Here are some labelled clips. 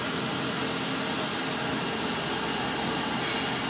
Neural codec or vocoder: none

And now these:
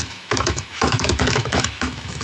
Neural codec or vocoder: autoencoder, DAC-VAE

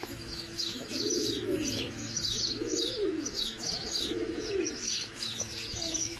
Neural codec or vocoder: autoencoder, DAC-VAE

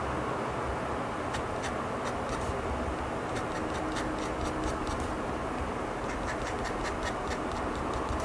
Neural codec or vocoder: none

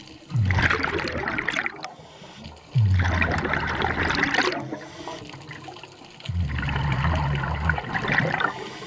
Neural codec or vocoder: none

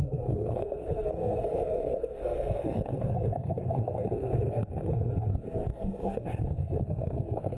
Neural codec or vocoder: codec, SNAC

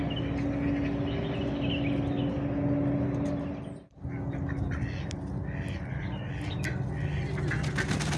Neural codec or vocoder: none